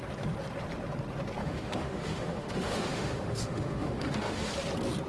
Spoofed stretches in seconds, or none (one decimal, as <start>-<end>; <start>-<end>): 1.4-4.5